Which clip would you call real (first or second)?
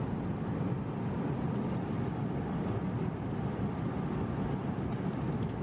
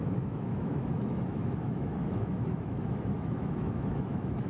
first